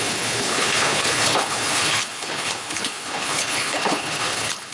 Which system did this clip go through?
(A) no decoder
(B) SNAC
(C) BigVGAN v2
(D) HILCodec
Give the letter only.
D